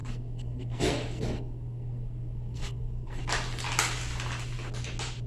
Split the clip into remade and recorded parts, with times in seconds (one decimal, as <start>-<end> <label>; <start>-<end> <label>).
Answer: 0.0-3.2 remade; 3.2-5.3 recorded

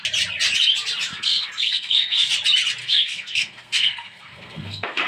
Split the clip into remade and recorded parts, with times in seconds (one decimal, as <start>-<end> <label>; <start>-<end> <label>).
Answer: 0.0-1.1 recorded; 1.1-2.3 remade; 2.3-2.8 recorded; 2.8-5.1 remade

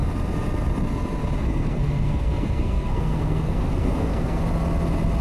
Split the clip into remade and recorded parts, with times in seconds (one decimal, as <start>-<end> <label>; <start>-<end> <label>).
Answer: 0.0-1.4 recorded; 1.4-4.4 remade; 4.4-5.2 recorded